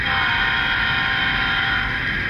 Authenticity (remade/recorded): recorded